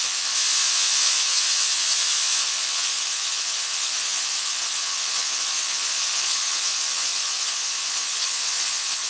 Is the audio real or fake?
fake